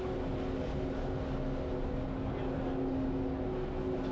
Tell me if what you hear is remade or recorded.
recorded